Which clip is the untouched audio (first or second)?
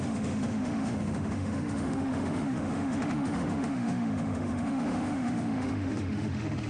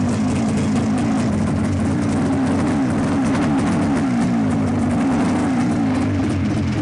second